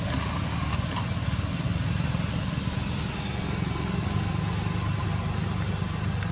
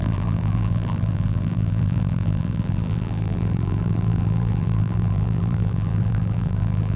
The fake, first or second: second